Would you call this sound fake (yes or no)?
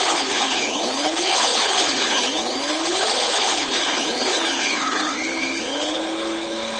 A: yes